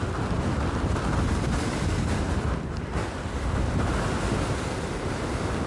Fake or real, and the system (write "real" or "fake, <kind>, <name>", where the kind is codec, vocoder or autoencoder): real